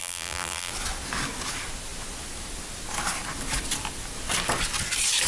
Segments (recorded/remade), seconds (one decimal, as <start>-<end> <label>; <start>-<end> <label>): 0.0-0.7 remade; 0.7-5.3 recorded